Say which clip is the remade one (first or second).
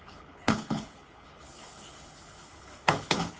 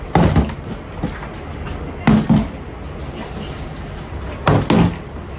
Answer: first